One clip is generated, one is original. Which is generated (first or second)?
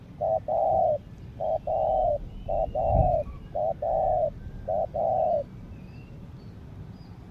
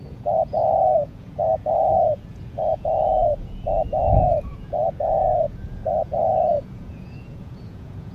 second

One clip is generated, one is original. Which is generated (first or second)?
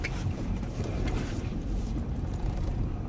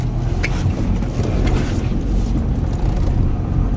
first